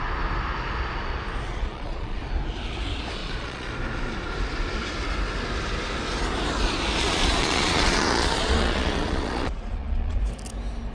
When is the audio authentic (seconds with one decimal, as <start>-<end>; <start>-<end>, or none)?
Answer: 0.0-1.5; 2.2-3.2; 3.7-7.0; 10.2-10.9